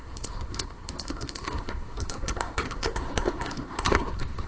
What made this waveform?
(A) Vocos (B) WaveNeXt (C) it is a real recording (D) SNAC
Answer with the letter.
D